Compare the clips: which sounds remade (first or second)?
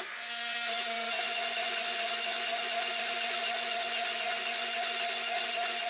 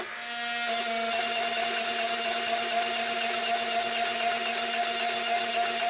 first